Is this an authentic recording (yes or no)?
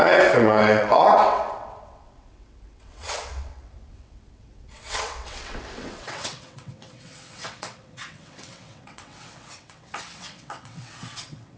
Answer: no